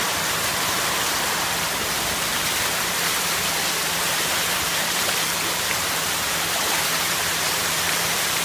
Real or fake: fake